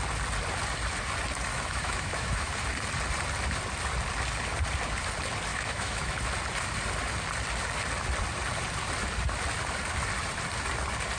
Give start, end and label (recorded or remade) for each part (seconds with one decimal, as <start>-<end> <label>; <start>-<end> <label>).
0.0-1.5 recorded; 1.5-2.5 remade; 2.5-5.5 recorded; 5.5-6.1 remade; 6.1-11.2 recorded